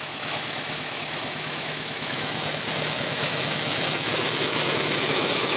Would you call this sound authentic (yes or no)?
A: no